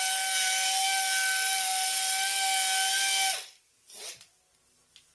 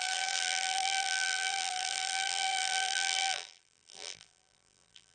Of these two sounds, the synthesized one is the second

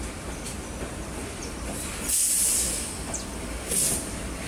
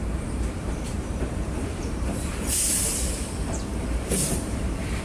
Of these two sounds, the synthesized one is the second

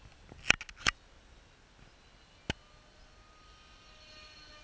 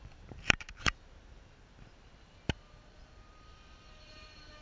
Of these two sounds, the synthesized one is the second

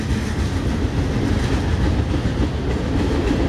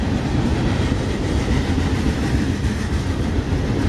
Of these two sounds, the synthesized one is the second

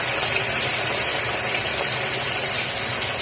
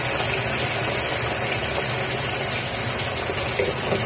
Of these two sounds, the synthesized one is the first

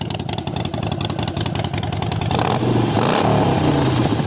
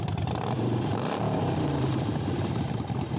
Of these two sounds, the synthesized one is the second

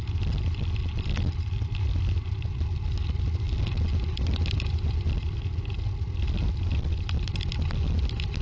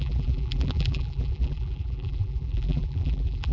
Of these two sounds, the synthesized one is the second